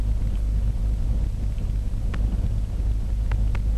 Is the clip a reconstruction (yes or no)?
no